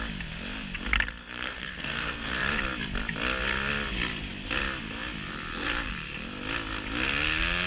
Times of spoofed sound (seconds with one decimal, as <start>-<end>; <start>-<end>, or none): 1.2-2.3